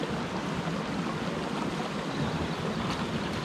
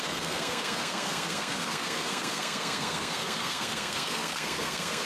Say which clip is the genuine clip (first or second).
first